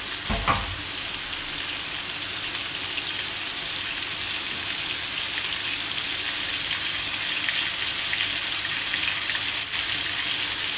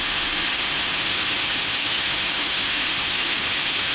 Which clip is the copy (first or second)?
second